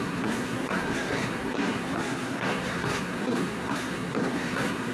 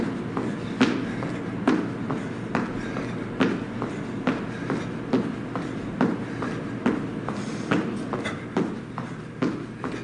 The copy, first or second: first